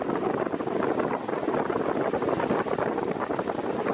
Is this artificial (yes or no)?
no